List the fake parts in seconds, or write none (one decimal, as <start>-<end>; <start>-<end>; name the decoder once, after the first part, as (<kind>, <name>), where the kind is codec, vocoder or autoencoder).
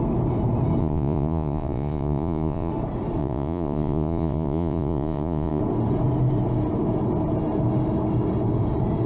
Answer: 0.8-2.7 (vocoder, Vocos); 3.2-5.6